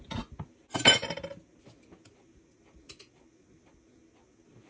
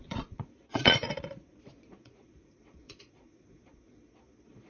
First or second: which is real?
first